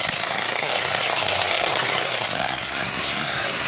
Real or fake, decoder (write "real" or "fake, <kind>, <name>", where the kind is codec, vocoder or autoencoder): fake, codec, SNAC